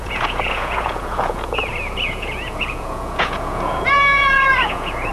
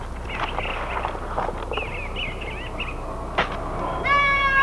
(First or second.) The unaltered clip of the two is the second